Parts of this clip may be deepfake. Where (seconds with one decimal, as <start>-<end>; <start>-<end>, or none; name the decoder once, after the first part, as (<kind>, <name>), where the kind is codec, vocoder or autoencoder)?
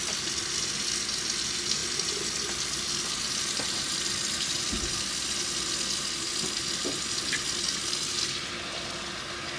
none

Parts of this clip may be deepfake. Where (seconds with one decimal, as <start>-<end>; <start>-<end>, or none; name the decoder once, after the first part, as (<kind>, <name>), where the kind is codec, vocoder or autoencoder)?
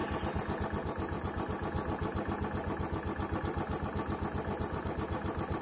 none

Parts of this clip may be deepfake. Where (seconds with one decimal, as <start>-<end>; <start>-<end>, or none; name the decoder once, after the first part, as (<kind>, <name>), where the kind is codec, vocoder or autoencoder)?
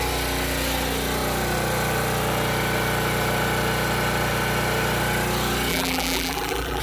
5.7-6.8 (vocoder, BigVGAN v2)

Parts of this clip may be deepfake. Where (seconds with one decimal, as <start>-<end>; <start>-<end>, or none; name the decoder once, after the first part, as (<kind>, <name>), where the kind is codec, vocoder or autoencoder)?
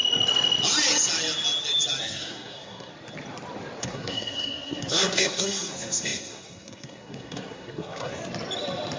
2.0-2.9 (codec, SNAC); 3.8-8.2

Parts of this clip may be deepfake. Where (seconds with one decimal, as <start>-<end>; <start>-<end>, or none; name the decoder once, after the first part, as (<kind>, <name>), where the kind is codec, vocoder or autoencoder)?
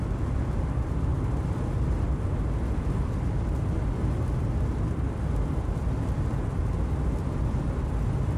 none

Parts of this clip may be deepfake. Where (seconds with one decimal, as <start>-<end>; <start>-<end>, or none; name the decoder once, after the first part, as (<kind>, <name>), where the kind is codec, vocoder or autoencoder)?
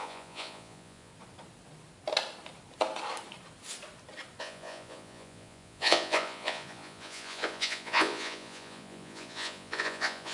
0.0-1.1 (vocoder, Vocos); 4.4-10.3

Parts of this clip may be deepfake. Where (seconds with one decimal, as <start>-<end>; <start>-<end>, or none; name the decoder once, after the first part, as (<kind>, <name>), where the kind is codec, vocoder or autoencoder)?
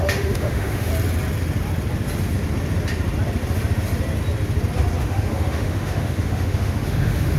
0.0-0.9 (autoencoder, DAC-VAE); 5.0-7.4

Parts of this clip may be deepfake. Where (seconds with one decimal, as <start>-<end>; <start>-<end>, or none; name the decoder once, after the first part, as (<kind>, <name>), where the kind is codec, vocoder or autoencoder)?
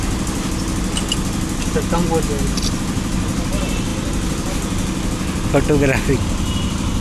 none